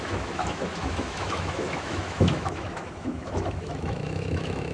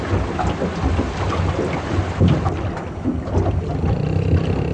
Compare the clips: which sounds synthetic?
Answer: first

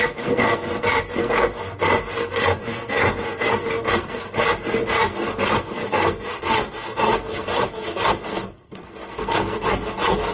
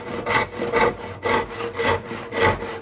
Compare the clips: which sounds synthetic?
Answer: first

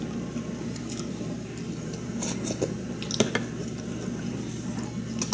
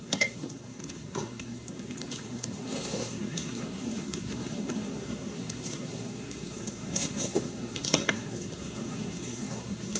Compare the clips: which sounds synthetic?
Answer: second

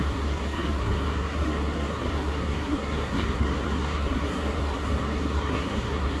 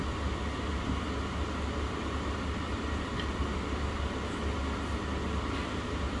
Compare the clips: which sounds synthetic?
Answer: first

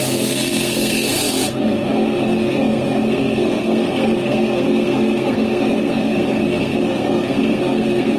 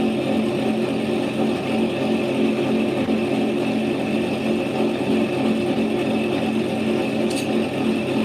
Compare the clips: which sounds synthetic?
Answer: first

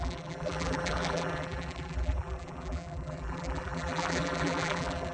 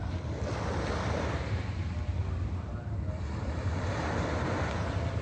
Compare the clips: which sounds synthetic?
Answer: first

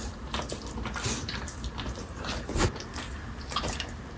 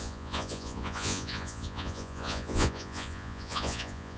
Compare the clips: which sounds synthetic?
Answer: second